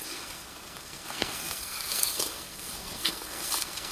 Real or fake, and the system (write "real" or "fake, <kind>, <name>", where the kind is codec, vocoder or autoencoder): fake, codec, SNAC